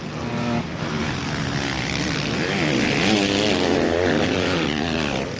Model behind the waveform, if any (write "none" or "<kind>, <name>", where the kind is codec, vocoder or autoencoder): none